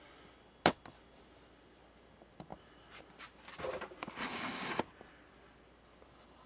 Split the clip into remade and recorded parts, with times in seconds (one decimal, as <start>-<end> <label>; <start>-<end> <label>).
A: 0.0-4.2 recorded; 4.2-4.8 remade; 4.8-6.5 recorded